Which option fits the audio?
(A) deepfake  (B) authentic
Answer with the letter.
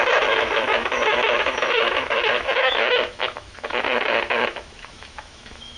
A